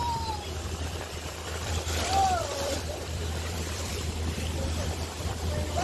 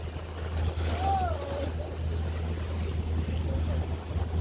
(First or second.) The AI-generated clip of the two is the first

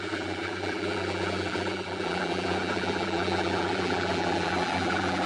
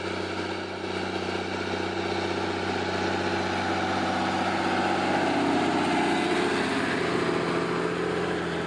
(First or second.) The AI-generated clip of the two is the first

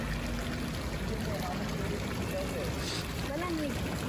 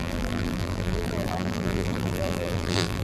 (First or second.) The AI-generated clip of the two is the second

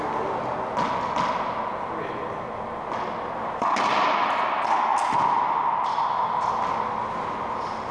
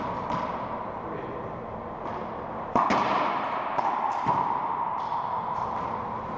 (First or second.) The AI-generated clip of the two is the second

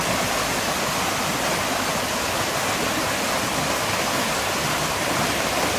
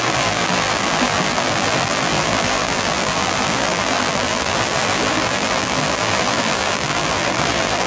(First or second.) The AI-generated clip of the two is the second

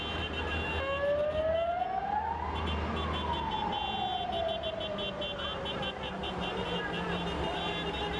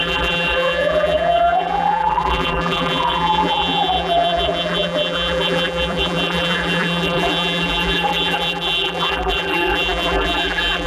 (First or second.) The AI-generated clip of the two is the second